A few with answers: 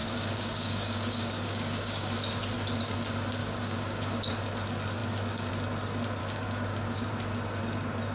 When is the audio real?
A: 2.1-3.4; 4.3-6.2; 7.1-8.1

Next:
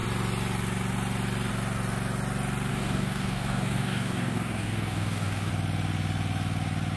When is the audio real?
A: 0.0-2.7; 5.5-7.0

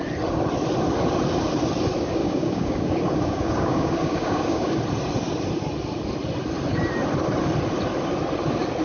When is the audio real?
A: 0.0-2.2; 4.8-8.8